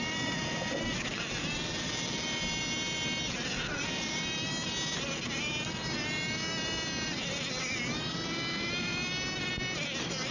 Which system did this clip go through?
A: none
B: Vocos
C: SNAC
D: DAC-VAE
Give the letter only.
A